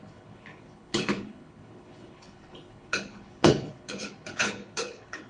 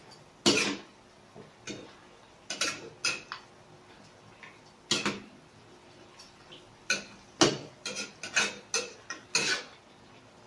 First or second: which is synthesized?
first